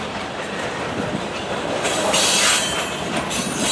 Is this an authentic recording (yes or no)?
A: no